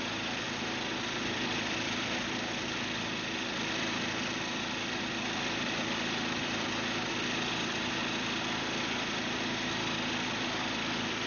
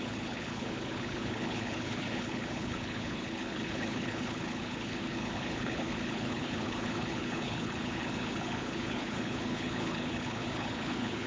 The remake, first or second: second